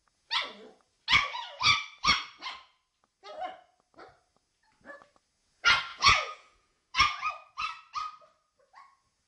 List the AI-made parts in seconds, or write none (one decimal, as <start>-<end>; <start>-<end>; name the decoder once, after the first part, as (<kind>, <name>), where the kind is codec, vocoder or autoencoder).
5.9-7.3 (vocoder, Vocos)